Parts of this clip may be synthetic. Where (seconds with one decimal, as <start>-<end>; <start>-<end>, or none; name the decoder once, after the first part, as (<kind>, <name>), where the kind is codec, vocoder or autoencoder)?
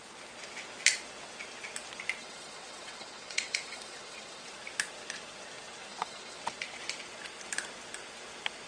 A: 2.2-4.5 (vocoder, WaveNeXt); 5.9-6.4